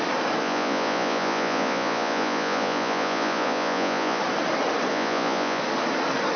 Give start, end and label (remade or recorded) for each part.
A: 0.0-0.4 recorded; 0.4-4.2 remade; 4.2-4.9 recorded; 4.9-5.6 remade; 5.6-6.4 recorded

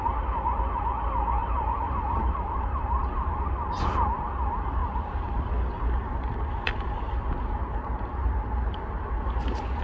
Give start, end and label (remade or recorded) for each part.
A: 0.0-1.4 recorded; 1.4-3.3 remade; 3.3-4.8 recorded; 4.8-5.5 remade; 5.5-9.8 recorded